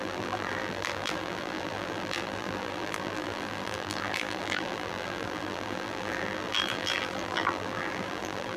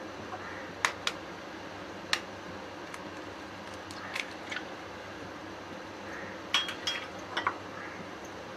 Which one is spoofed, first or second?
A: first